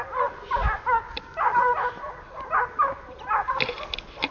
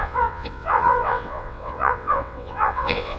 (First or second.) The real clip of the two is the first